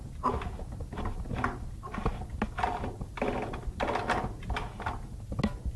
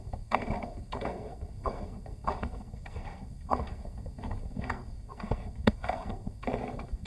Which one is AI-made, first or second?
second